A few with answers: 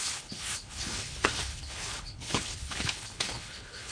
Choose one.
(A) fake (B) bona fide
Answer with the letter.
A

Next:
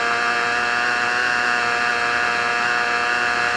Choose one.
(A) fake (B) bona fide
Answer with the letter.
B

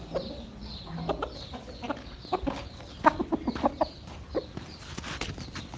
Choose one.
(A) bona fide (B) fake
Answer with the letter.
A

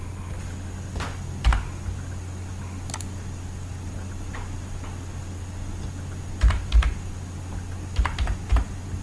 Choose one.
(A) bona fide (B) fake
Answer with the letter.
A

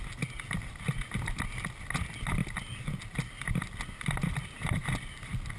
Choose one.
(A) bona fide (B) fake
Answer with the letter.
A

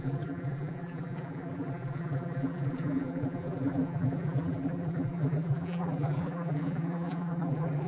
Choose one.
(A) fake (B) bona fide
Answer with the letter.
A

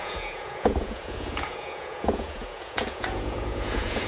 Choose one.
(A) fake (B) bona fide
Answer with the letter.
A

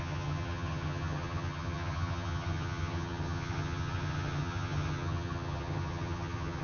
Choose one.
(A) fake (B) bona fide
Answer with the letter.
A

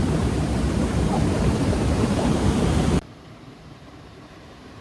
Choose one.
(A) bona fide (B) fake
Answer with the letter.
B